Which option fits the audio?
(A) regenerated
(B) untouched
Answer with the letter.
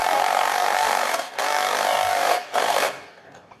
A